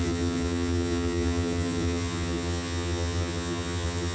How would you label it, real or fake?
fake